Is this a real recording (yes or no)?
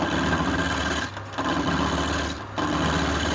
yes